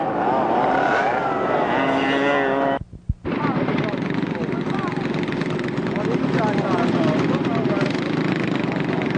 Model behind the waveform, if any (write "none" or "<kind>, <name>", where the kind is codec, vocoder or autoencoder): none